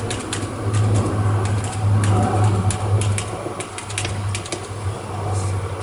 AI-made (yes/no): no